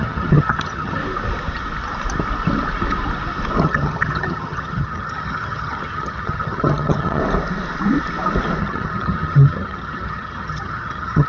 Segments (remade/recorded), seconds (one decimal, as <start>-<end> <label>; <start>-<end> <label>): 0.0-1.0 remade; 1.0-3.6 recorded; 3.6-7.2 remade; 7.2-8.6 recorded; 8.6-11.3 remade